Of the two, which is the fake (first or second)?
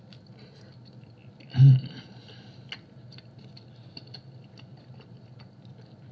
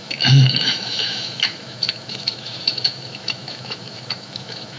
second